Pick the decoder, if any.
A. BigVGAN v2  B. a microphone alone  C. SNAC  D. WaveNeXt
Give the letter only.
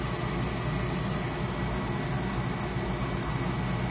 B